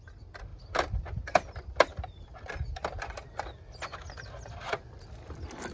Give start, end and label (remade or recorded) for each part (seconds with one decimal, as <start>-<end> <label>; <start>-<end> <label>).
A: 0.0-0.5 recorded; 0.5-1.0 remade; 1.0-5.7 recorded

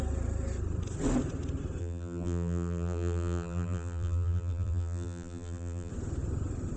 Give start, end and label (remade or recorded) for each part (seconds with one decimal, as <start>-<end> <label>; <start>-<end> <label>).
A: 0.0-1.8 recorded; 1.8-5.9 remade; 5.9-6.8 recorded

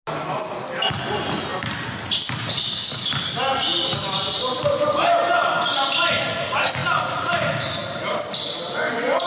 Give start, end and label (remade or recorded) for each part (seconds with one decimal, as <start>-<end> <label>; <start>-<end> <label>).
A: 0.0-1.5 recorded; 1.5-2.0 remade; 2.0-3.7 recorded; 3.7-5.3 remade; 5.3-6.8 recorded; 6.8-7.6 remade; 7.6-9.3 recorded

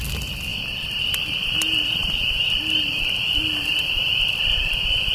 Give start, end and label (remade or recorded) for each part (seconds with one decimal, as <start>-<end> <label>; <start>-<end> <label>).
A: 0.0-0.5 remade; 0.5-1.2 recorded; 1.2-5.1 remade

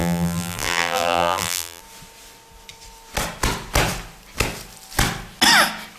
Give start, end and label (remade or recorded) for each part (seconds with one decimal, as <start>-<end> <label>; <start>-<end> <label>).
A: 0.0-1.8 remade; 1.8-6.0 recorded

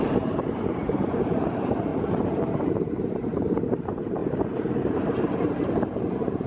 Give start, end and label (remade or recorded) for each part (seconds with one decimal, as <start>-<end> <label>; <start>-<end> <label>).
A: 0.0-1.9 remade; 1.9-2.5 recorded; 2.5-4.2 remade; 4.2-4.9 recorded; 4.9-6.5 remade

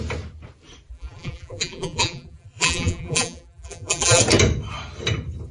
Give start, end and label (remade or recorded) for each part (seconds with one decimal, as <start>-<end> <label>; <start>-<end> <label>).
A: 0.0-0.9 recorded; 0.9-4.2 remade; 4.2-5.5 recorded

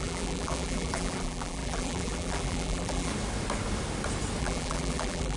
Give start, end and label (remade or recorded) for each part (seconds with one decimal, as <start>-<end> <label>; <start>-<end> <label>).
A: 0.0-3.1 remade; 3.1-4.4 recorded; 4.4-5.4 remade